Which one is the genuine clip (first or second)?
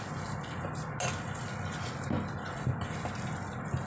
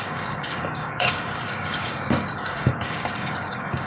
first